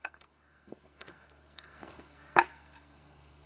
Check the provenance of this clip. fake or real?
fake